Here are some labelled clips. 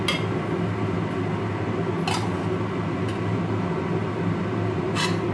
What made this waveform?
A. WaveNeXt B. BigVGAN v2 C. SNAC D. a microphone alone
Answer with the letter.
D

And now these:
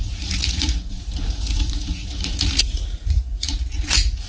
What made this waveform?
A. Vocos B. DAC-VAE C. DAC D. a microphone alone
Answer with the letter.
A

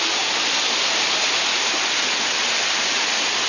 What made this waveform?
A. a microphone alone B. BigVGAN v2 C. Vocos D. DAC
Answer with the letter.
A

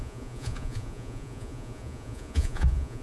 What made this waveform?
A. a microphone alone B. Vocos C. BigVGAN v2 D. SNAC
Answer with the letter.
B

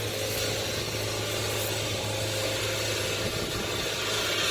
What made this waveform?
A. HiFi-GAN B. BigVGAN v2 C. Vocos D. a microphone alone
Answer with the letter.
D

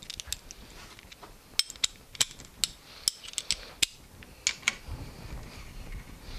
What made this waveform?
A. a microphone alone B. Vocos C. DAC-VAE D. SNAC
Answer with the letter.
A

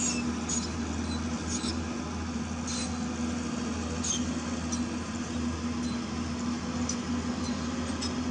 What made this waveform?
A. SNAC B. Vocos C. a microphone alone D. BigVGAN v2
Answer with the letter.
C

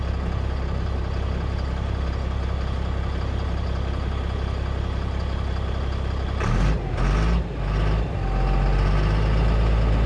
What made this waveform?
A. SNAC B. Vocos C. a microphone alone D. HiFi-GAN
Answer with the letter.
C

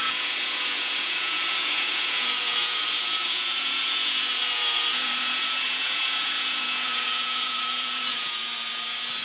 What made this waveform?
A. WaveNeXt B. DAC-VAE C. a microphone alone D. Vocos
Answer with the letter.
D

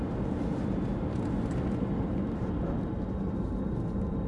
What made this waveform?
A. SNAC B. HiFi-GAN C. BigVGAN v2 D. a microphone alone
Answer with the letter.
D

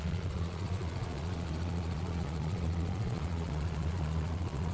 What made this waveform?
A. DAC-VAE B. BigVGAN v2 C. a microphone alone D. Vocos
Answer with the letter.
D